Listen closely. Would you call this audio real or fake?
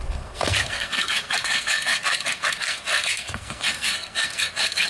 fake